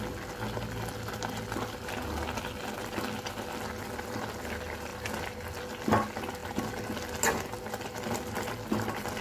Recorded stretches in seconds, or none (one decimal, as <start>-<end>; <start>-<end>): 0.0-9.2